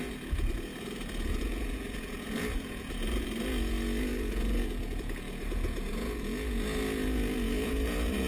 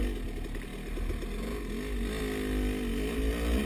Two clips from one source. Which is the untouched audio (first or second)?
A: second